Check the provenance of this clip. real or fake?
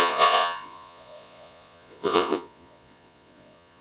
fake